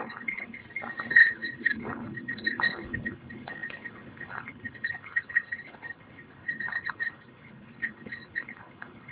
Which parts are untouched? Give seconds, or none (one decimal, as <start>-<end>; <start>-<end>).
0.6-1.1